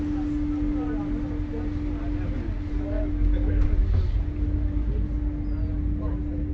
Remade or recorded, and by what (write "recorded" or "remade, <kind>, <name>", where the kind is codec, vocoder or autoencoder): recorded